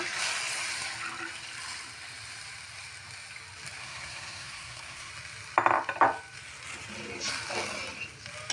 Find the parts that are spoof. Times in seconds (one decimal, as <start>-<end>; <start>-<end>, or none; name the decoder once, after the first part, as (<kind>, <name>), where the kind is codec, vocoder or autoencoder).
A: 3.8-5.1 (codec, SNAC)